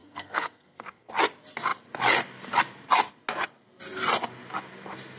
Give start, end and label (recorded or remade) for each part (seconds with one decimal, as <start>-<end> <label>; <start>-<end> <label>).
0.0-1.1 remade; 1.1-5.2 recorded